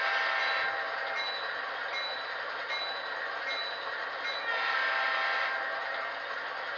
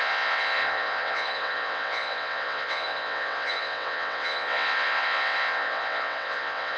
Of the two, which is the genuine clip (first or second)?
first